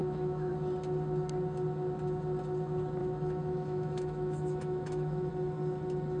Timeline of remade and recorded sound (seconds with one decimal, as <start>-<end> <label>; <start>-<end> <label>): 0.0-0.5 remade; 0.5-3.0 recorded; 3.0-5.3 remade; 5.3-6.2 recorded